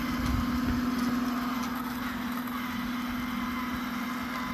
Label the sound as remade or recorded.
recorded